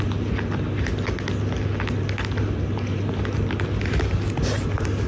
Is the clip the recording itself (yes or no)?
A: yes